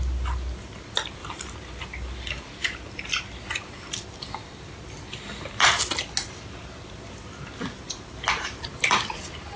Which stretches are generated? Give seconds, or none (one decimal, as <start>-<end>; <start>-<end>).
1.2-1.8

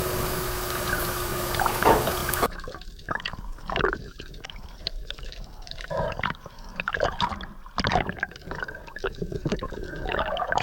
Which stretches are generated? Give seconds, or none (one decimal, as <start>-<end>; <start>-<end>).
0.0-7.3; 7.9-10.6